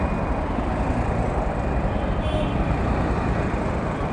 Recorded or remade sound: recorded